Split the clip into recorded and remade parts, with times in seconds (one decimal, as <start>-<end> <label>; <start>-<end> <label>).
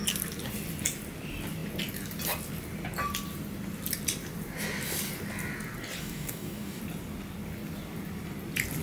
0.0-6.0 recorded; 6.0-6.8 remade; 6.8-8.8 recorded